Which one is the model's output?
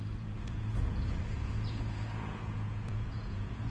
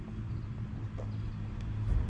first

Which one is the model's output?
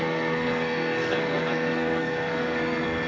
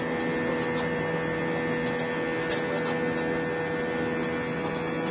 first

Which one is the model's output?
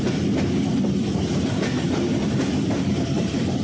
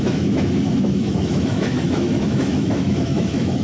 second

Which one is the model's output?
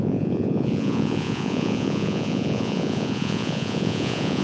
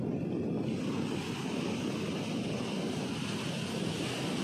first